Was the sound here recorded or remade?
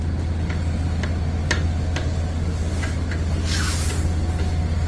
recorded